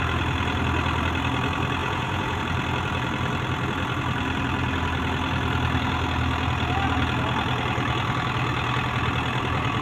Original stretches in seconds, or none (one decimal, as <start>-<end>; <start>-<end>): 0.0-1.8; 2.4-9.8